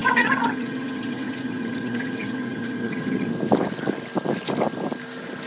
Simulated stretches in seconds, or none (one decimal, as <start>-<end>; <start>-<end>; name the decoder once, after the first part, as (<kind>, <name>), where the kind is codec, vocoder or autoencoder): 0.0-3.3 (vocoder, HiFi-GAN)